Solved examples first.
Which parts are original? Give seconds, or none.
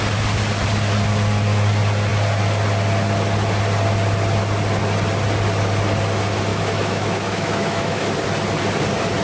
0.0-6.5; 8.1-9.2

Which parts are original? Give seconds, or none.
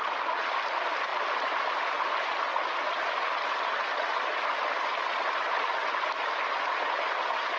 0.0-7.6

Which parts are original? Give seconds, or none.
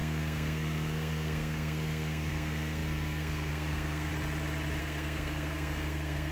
4.1-4.8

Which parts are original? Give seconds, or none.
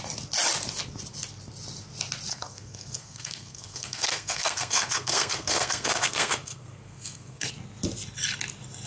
0.0-2.3; 7.5-8.9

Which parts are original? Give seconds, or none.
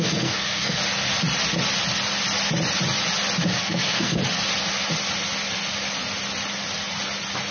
0.8-3.6; 4.2-7.5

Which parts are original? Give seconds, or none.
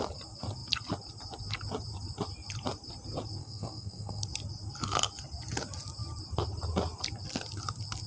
0.0-3.4; 4.2-8.1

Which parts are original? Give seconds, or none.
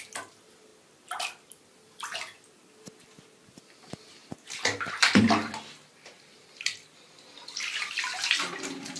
4.2-5.2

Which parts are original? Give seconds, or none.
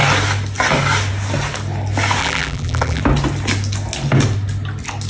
0.0-2.2; 3.0-5.1